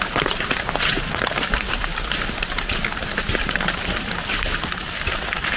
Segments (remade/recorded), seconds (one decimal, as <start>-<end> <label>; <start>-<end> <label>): 0.0-1.9 remade; 1.9-5.6 recorded